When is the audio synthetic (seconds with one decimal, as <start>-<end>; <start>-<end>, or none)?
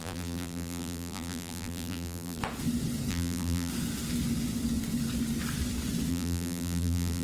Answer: 0.0-2.4; 3.1-3.7; 6.1-7.2